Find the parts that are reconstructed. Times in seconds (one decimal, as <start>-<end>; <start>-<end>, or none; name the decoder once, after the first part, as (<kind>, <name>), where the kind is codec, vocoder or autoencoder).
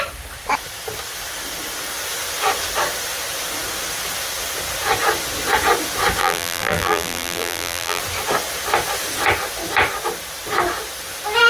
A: 6.2-8.0 (vocoder, BigVGAN v2)